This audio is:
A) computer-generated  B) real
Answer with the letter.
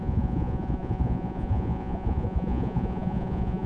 A